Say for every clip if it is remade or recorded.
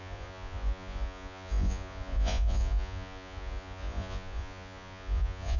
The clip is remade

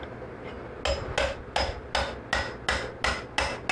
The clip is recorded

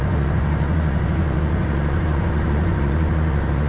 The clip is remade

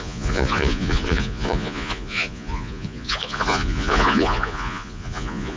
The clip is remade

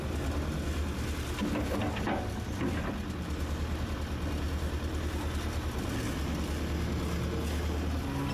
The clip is recorded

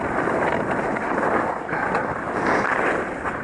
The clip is recorded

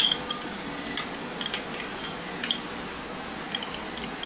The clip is recorded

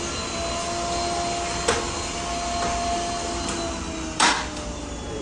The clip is recorded